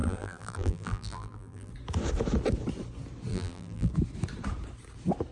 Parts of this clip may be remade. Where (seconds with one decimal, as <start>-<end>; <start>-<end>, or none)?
0.0-1.7; 3.3-3.9